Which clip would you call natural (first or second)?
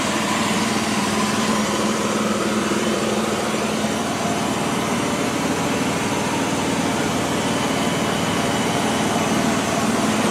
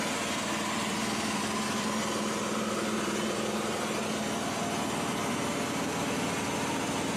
second